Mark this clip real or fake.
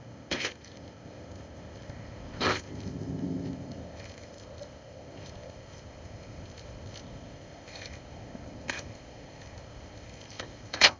fake